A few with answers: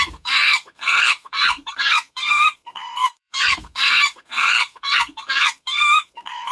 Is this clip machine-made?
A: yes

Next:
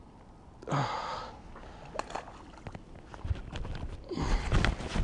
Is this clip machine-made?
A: no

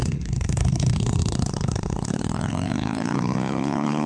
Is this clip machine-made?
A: yes